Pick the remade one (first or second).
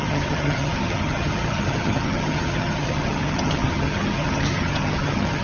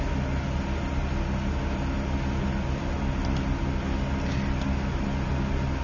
first